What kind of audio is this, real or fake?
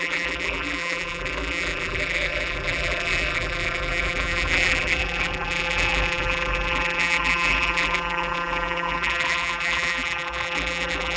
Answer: fake